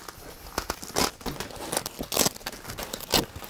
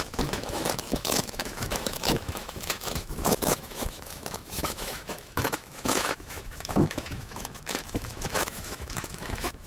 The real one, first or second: first